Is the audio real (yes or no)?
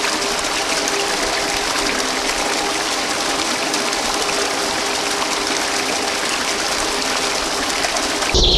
yes